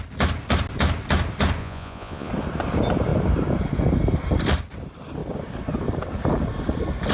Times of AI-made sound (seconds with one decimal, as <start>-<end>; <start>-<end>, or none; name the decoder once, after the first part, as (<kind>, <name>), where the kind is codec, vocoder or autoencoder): 1.6-2.3 (vocoder, Vocos)